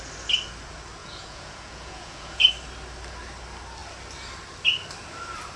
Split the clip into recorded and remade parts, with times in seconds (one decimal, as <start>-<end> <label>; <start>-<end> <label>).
0.0-1.0 recorded; 1.0-2.5 remade; 2.5-5.6 recorded